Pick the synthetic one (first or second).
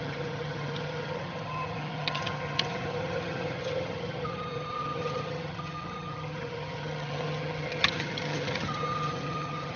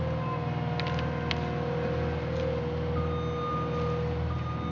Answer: first